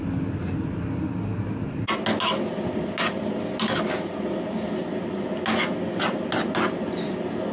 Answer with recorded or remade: recorded